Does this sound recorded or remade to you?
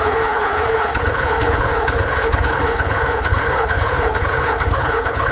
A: remade